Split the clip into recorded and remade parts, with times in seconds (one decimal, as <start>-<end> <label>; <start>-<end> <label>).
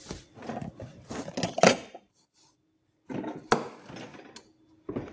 0.0-5.1 recorded